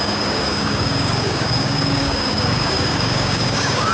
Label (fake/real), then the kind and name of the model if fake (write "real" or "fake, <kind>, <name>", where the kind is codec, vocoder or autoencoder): fake, codec, DAC